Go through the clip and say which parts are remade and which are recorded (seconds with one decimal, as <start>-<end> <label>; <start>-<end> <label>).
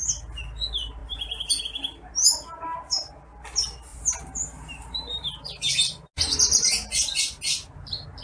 0.0-3.9 recorded; 3.9-5.7 remade; 5.7-8.2 recorded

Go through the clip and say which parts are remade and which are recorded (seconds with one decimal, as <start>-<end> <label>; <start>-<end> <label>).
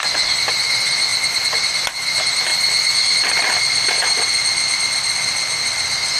0.0-1.1 recorded; 1.1-1.6 remade; 1.6-2.5 recorded; 2.5-6.2 remade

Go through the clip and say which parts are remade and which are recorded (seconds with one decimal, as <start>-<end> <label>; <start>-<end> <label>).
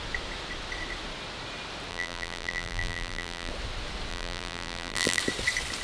0.0-1.9 recorded; 1.9-3.5 remade; 3.5-4.1 recorded; 4.1-5.2 remade; 5.2-5.8 recorded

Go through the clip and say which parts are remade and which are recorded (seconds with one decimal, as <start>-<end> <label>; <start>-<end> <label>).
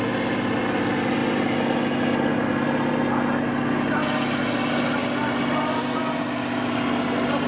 0.0-7.5 recorded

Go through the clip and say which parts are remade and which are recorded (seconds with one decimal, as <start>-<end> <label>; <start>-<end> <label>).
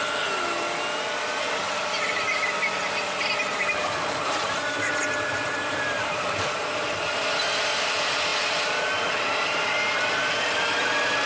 0.0-3.5 recorded; 3.5-7.0 remade; 7.0-11.3 recorded